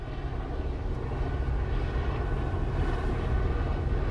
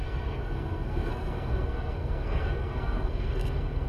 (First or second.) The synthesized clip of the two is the second